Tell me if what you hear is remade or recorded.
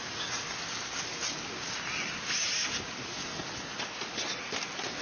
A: recorded